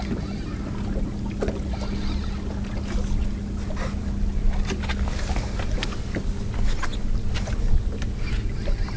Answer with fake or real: real